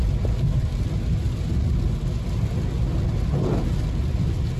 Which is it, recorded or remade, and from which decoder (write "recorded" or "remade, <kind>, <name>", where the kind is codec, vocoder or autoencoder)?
recorded